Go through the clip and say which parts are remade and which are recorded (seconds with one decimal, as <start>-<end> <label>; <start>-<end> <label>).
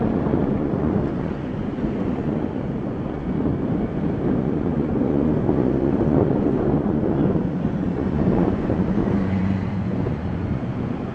0.0-3.5 remade; 3.5-4.4 recorded; 4.4-11.1 remade